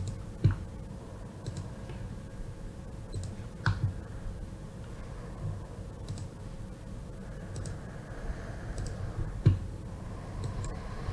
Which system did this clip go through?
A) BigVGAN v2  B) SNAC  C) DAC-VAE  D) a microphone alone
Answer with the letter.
D